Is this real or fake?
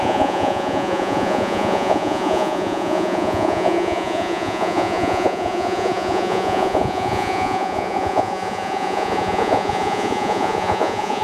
fake